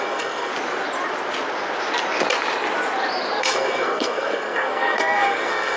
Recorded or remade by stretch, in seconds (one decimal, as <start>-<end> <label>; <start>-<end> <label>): 0.0-0.5 remade; 0.5-3.4 recorded; 3.4-5.8 remade